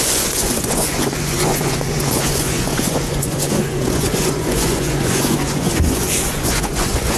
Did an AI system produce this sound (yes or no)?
yes